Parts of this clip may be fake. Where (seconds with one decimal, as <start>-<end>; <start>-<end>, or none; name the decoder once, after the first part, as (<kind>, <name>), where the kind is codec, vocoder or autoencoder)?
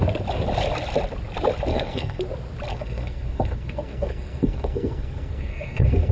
1.7-2.2 (codec, SNAC); 2.7-6.1